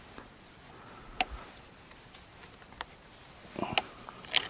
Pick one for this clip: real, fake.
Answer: real